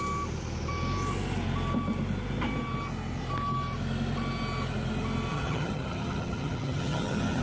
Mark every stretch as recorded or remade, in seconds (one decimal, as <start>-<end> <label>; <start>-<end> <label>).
0.0-5.3 recorded; 5.3-7.4 remade